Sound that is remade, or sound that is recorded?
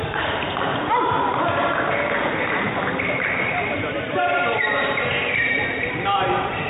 remade